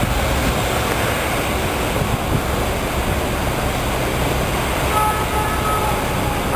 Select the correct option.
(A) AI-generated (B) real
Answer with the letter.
B